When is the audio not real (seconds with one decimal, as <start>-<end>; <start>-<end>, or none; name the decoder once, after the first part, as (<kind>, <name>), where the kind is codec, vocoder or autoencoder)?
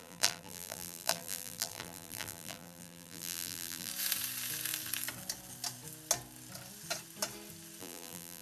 0.0-3.9 (vocoder, BigVGAN v2); 7.8-8.4